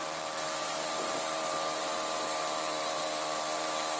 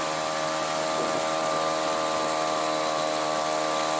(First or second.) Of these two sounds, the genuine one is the second